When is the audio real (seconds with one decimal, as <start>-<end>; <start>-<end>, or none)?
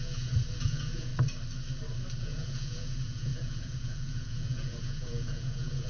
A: 1.1-2.2